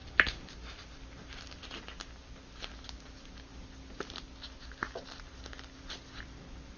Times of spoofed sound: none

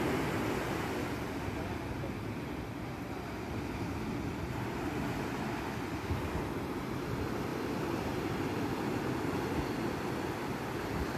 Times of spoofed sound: 7.5-8.5 (vocoder, BigVGAN v2)

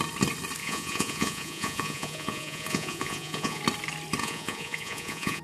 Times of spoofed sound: 0.6-3.6 (vocoder, Vocos); 4.2-5.4